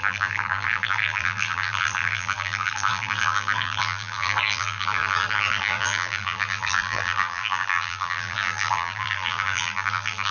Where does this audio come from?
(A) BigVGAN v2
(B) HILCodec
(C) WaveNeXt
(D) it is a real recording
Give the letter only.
A